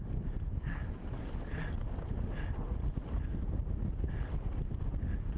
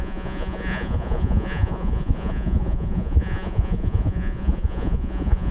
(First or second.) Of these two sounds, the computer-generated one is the second